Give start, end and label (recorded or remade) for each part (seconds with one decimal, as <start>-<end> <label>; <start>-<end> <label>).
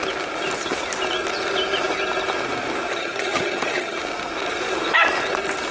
0.0-2.9 recorded; 2.9-4.0 remade; 4.0-5.7 recorded